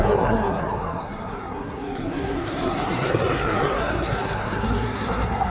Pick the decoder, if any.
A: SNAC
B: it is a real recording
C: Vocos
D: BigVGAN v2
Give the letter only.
A